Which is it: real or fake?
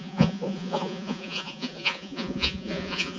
fake